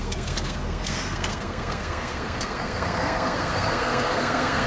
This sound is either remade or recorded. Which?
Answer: remade